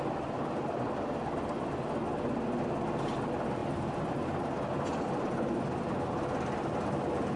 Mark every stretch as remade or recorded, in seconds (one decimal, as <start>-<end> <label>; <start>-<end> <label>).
0.0-7.4 recorded